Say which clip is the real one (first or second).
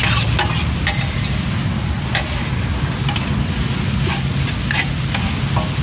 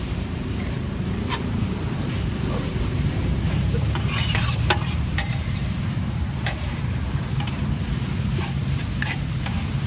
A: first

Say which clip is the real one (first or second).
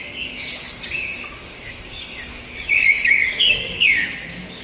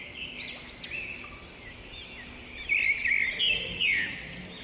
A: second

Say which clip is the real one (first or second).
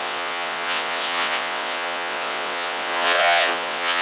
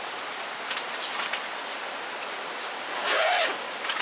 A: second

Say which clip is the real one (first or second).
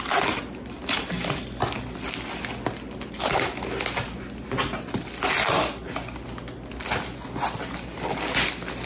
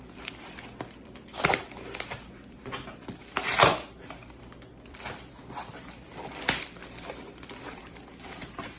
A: first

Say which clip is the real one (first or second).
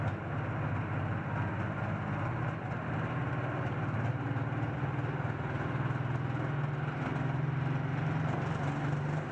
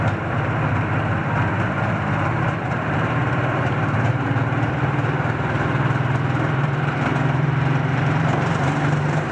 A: first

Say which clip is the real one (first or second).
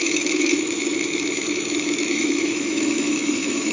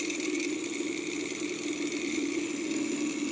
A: second